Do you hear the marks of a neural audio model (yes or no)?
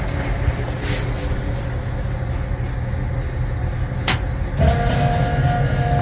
no